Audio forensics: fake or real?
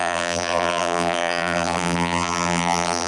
fake